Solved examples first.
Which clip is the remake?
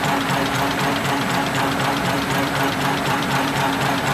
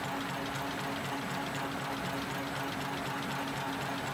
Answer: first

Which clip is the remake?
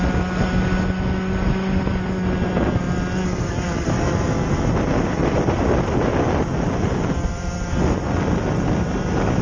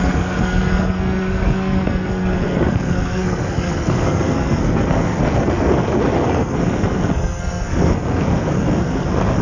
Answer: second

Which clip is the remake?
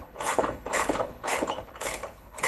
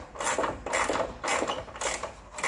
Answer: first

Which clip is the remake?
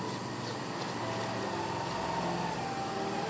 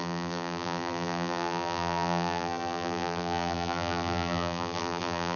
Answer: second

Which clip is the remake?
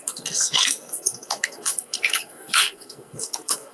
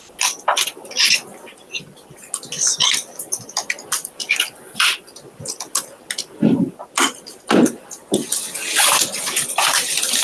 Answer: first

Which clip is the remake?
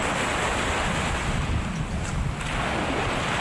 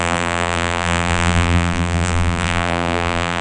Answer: second